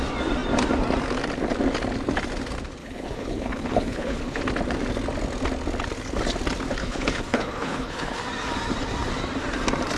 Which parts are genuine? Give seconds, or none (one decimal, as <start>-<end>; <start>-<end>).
0.0-2.8; 4.4-6.8; 8.2-10.0